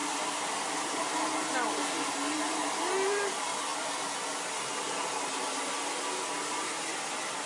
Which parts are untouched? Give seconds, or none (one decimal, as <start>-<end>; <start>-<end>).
0.0-7.5